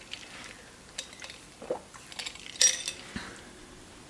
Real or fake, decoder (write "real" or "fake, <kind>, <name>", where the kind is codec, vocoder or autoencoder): real